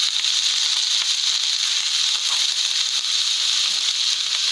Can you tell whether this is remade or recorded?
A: recorded